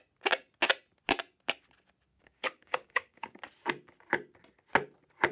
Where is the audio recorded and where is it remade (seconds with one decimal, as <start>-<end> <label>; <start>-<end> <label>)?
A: 0.0-2.1 recorded; 2.1-3.4 remade; 3.4-5.3 recorded